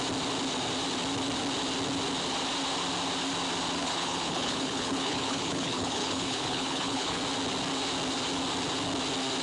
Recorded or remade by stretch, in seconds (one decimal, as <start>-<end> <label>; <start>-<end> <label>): 0.0-3.8 recorded; 3.8-7.2 remade; 7.2-9.4 recorded